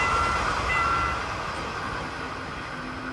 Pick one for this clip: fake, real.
real